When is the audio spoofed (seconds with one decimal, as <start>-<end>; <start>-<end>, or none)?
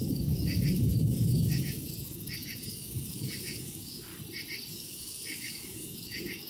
0.0-4.1; 4.7-6.5